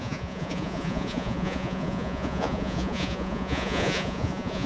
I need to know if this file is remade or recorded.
remade